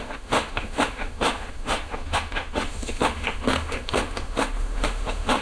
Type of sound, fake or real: fake